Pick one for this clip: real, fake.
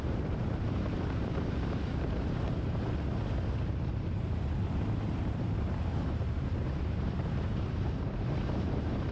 fake